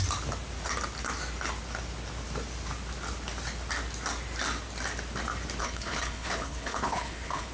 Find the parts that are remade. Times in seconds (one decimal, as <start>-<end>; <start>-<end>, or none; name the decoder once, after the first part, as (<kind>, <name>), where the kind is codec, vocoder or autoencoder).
5.6-7.5 (codec, HILCodec)